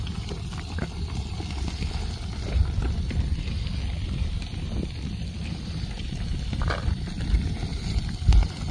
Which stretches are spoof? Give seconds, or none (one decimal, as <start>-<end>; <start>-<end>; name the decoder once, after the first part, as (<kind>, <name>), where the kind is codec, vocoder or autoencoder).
none

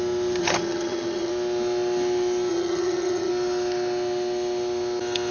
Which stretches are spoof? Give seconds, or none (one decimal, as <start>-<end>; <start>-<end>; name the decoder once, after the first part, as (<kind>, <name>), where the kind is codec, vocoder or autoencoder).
0.4-1.3 (vocoder, HiFi-GAN); 2.5-3.3

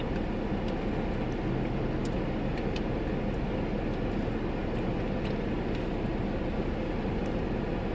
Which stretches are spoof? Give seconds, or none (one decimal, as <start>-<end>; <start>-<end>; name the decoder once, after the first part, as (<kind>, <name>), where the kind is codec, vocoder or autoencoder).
none

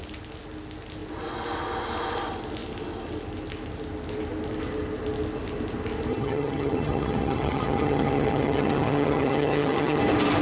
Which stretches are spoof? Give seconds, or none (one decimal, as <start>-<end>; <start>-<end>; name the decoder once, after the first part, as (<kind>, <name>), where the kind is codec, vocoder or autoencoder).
6.1-10.0 (vocoder, HiFi-GAN)

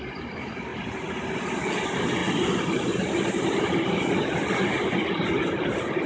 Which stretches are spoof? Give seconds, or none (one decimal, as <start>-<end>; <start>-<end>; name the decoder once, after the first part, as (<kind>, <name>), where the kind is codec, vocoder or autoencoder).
none

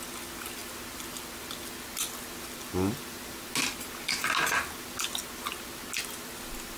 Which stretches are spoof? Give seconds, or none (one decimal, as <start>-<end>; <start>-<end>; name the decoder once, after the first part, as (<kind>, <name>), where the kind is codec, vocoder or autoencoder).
none